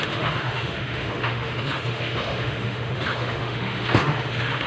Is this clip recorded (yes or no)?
no